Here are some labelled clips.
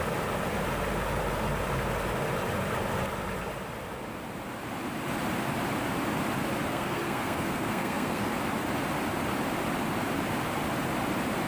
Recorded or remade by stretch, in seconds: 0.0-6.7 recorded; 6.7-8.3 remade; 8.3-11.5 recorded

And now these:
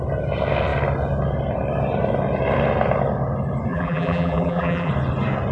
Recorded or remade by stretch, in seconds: 0.0-3.7 recorded; 3.7-4.9 remade; 4.9-5.5 recorded

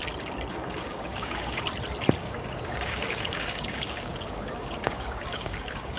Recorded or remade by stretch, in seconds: 0.0-0.5 recorded; 0.5-1.6 remade; 1.6-2.2 recorded; 2.2-6.0 remade

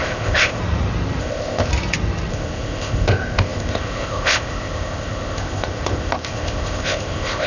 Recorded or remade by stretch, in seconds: 0.0-0.6 remade; 0.6-1.2 recorded; 1.2-1.7 remade; 1.7-2.3 recorded; 2.3-7.5 remade

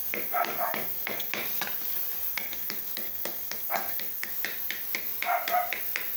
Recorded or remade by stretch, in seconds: 0.0-1.3 remade; 1.3-2.3 recorded; 2.3-4.3 remade; 4.3-6.2 recorded

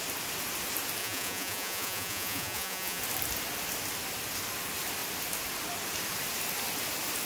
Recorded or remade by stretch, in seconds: 0.0-1.0 recorded; 1.0-3.0 remade; 3.0-7.3 recorded

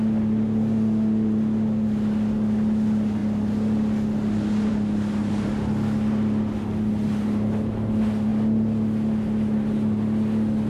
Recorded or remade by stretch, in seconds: 0.0-10.7 recorded